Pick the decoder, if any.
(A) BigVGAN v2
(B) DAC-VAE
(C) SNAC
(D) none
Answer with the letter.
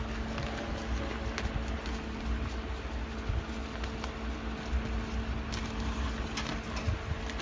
D